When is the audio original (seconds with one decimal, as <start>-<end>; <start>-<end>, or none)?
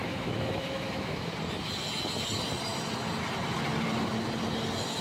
1.3-5.0